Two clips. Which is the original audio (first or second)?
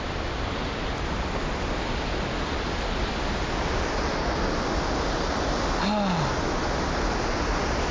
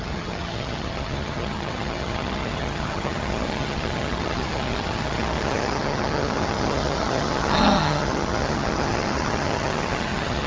first